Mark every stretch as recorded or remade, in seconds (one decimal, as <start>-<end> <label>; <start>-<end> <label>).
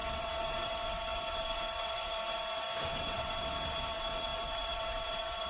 0.0-5.5 remade